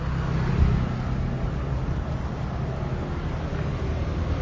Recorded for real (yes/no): yes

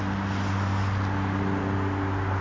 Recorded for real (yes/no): yes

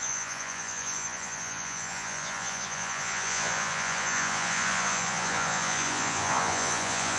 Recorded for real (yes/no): no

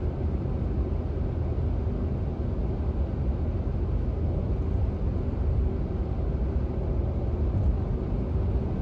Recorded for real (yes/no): yes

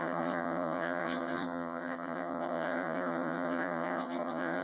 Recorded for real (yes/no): no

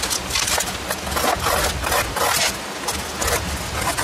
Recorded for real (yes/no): yes